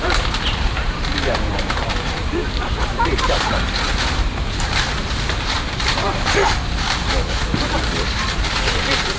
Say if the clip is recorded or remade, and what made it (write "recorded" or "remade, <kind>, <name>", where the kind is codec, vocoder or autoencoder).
remade, vocoder, BigVGAN v2